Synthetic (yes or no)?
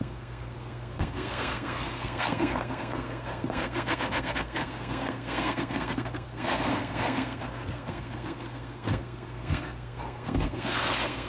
yes